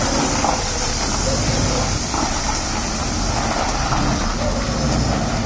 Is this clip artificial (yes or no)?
no